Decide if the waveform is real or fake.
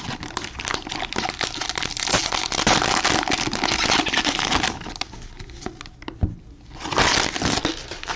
real